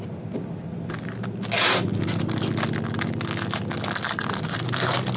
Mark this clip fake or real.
real